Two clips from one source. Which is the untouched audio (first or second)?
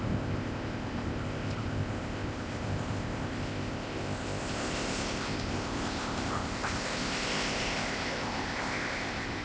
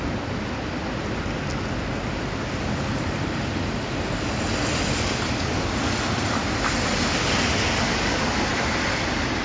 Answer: second